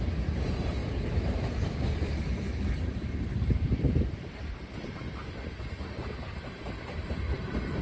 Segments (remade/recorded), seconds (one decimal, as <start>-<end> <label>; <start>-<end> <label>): 0.0-0.8 remade; 0.8-1.4 recorded; 1.4-7.8 remade